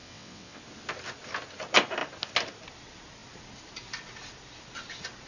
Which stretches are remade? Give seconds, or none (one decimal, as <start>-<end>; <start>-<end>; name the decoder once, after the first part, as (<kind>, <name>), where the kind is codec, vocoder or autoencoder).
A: 0.0-0.6 (vocoder, WaveNeXt)